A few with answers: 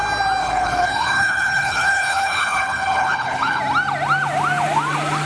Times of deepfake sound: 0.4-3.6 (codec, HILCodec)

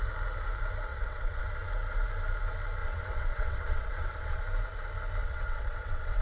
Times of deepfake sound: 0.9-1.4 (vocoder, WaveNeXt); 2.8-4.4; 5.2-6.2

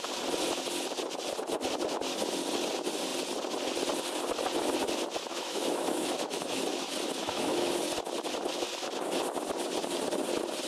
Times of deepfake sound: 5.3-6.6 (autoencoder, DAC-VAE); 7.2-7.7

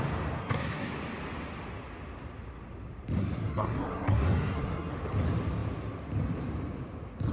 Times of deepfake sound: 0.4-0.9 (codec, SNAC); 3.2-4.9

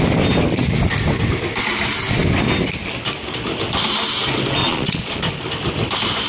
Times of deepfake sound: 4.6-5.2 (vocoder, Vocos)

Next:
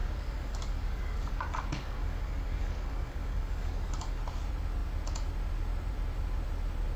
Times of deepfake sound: 0.0-4.2 (codec, DAC)

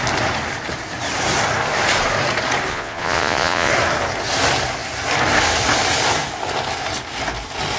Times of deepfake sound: 2.7-3.7 (vocoder, Vocos)

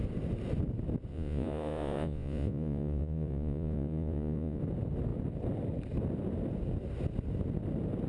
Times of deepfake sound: 1.1-4.6 (vocoder, Vocos)